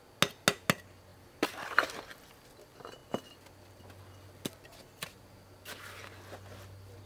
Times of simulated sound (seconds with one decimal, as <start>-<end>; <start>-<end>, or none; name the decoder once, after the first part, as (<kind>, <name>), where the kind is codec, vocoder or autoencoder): 1.1-2.4 (vocoder, BigVGAN v2)